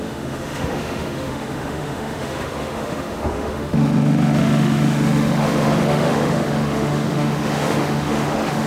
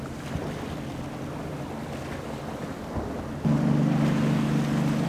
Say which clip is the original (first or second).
second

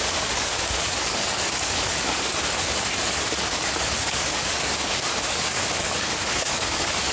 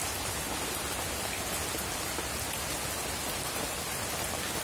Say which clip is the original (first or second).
second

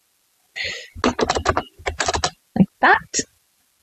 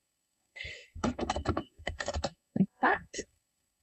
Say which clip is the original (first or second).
first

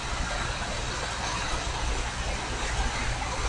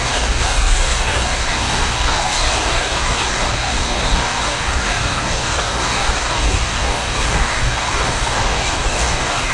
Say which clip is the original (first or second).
first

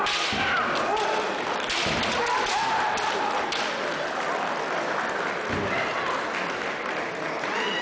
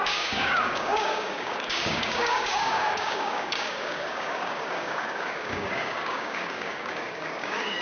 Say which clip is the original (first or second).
first